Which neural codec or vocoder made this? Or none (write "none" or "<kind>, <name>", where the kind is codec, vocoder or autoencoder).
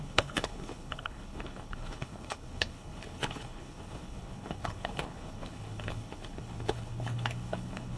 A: codec, HILCodec